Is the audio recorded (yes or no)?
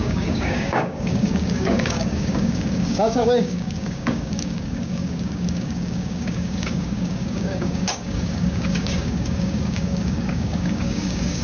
no